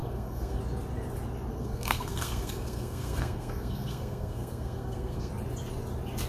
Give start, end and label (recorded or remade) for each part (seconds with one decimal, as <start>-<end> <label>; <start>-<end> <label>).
0.0-0.6 remade; 0.6-1.5 recorded; 1.5-5.3 remade; 5.3-6.3 recorded